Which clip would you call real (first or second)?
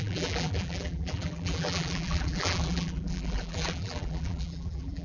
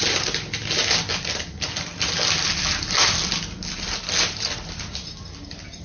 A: second